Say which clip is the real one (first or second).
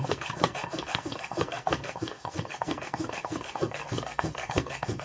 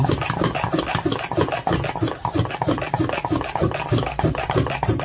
second